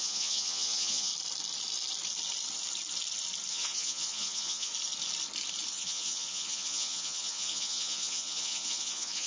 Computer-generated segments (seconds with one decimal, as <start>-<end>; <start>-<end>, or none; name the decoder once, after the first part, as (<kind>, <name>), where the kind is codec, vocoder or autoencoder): 0.0-1.1 (vocoder, Vocos); 3.5-4.7; 5.7-9.3